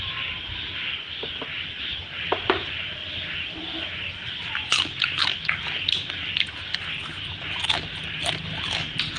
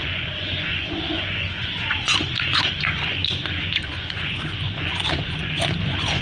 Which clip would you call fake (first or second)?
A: second